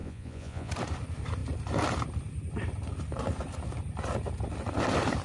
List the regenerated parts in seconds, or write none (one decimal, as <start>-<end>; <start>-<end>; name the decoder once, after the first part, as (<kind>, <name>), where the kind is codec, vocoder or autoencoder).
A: 0.0-0.7 (vocoder, Vocos)